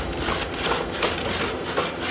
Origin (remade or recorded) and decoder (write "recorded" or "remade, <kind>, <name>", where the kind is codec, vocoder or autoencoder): recorded